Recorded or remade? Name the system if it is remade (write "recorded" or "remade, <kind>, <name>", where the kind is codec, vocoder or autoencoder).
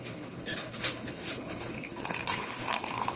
remade, codec, HILCodec